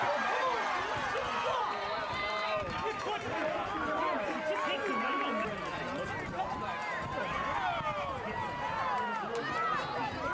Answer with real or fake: real